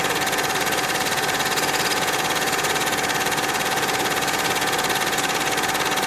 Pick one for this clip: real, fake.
fake